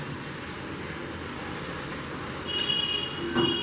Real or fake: real